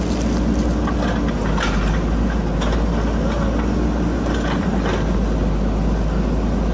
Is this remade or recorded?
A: recorded